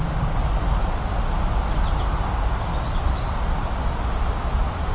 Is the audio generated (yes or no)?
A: no